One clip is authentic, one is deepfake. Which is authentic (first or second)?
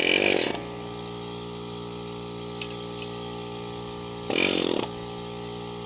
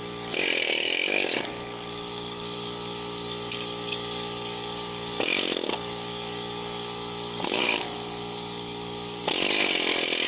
first